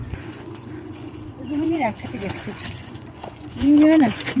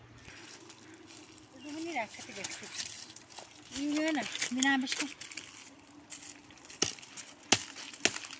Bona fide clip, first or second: second